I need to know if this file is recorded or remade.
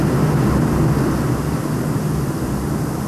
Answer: recorded